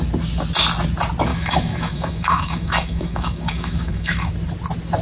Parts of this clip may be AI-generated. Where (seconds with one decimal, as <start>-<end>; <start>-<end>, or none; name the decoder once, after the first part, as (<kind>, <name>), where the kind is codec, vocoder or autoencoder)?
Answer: 1.3-4.3 (autoencoder, DAC-VAE)